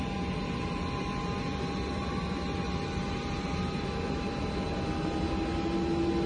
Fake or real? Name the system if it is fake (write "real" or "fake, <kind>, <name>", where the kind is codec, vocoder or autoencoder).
real